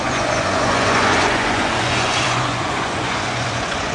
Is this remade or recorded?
remade